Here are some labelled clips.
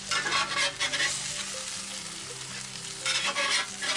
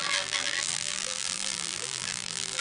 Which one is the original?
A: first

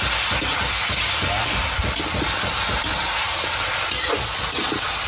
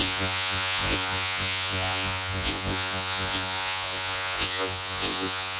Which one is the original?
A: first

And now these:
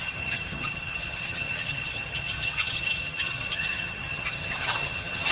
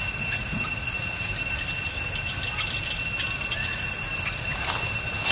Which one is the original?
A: second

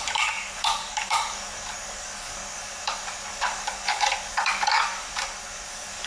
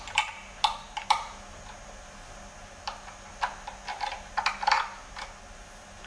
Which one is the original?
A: second